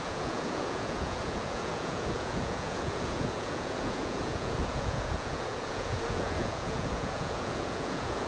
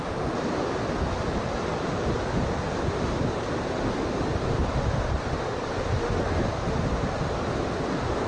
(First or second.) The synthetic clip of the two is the first